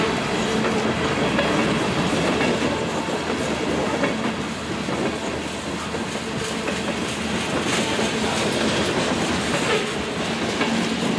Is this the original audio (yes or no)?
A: yes